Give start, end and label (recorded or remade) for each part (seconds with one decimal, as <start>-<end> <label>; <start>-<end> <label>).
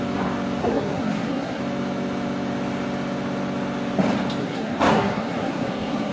0.0-0.6 recorded; 0.6-1.6 remade; 1.6-4.4 recorded; 4.4-6.1 remade